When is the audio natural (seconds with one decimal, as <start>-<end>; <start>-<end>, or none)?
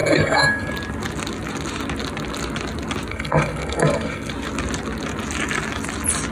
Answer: 0.7-3.1; 4.3-6.3